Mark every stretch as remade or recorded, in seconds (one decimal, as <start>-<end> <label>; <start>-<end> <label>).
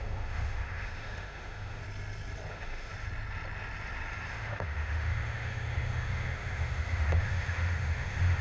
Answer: 0.0-1.8 remade; 1.8-2.5 recorded; 2.5-2.9 remade; 2.9-4.3 recorded; 4.3-8.4 remade